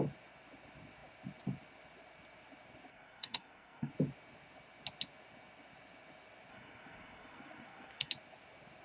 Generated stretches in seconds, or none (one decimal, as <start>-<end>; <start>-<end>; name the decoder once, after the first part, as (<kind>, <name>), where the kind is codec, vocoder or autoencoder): 2.9-3.9 (codec, SNAC); 6.5-8.1